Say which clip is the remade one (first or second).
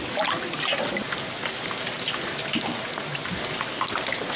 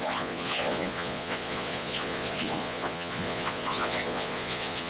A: second